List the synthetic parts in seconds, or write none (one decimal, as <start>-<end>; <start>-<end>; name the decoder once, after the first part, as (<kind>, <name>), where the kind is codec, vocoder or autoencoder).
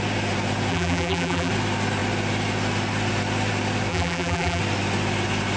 0.7-1.5 (vocoder, BigVGAN v2); 3.9-4.6